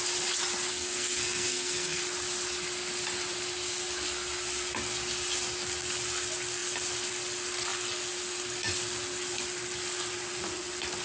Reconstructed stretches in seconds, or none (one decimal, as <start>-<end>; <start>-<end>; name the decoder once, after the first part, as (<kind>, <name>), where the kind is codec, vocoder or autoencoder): 0.7-2.0 (codec, SNAC)